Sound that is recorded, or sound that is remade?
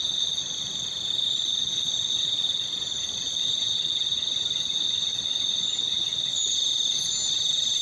recorded